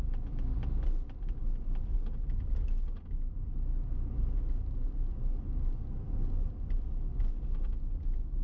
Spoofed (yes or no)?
no